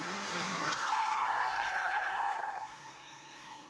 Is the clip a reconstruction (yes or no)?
yes